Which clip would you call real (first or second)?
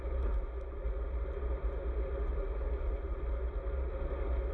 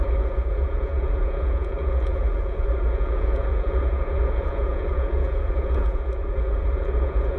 first